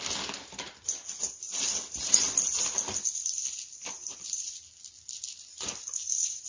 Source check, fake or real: real